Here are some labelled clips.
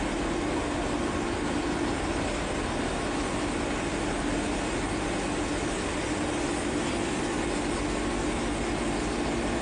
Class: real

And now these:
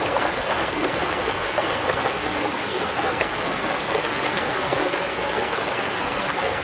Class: fake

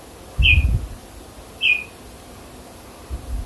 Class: real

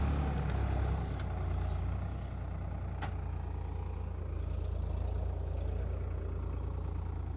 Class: real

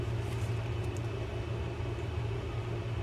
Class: real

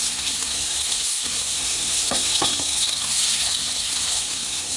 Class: fake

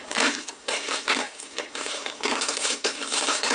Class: fake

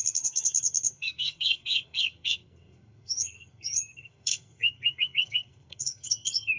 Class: fake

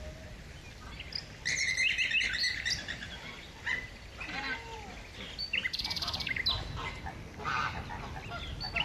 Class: real